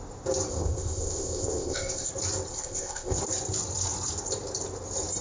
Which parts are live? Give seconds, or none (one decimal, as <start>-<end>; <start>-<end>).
0.0-0.5; 2.1-2.5; 3.2-5.2